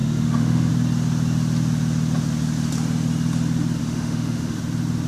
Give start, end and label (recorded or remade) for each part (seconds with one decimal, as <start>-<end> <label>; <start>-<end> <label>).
0.0-0.7 remade; 0.7-3.8 recorded; 3.8-4.6 remade; 4.6-5.1 recorded